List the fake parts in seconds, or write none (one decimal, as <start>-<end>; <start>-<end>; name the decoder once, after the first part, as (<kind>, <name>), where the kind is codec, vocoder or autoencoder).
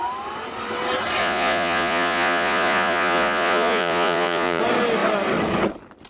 1.2-4.6 (vocoder, Vocos)